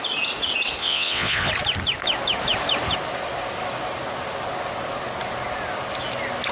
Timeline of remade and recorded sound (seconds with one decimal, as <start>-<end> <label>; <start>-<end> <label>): 0.0-0.8 recorded; 0.8-1.5 remade; 1.5-6.5 recorded

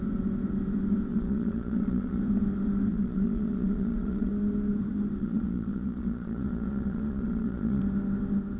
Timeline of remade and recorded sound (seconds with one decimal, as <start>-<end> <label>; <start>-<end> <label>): 0.0-1.1 recorded; 1.1-2.2 remade; 2.2-2.9 recorded; 2.9-4.3 remade; 4.3-5.2 recorded; 5.2-7.8 remade; 7.8-8.6 recorded

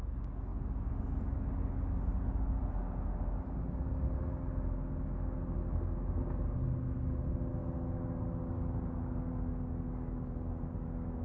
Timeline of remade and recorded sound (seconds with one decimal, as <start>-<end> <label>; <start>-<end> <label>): 0.0-11.2 recorded

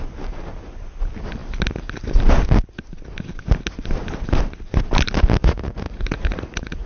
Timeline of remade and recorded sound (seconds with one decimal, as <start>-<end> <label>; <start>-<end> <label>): 0.0-5.4 recorded; 5.4-6.9 remade

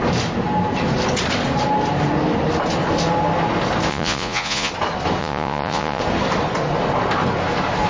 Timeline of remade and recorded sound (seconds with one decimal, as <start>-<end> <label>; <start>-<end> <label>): 0.0-3.9 recorded; 3.9-4.7 remade; 4.7-5.2 recorded; 5.2-6.0 remade; 6.0-7.9 recorded